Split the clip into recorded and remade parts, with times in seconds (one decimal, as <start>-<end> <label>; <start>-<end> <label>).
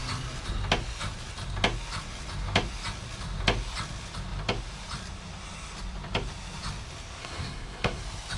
0.0-7.2 recorded; 7.2-8.0 remade; 8.0-8.4 recorded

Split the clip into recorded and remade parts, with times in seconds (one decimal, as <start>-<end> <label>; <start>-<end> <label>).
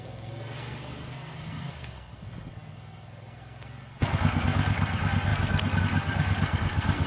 0.0-7.1 remade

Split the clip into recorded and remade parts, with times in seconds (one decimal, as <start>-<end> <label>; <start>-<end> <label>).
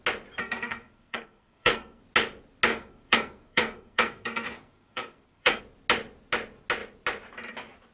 0.0-0.4 recorded; 0.4-2.0 remade; 2.0-2.7 recorded; 2.7-5.6 remade; 5.6-7.9 recorded